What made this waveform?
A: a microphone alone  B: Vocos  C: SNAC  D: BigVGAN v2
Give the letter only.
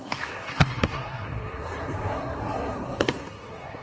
C